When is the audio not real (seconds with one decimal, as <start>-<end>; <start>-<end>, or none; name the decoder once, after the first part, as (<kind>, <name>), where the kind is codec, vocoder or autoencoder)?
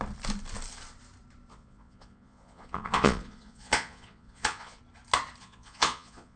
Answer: 1.5-4.8 (vocoder, Vocos); 5.4-6.4